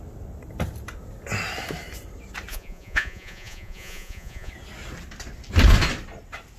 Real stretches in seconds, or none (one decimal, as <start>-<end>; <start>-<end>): 0.0-2.5; 4.5-6.6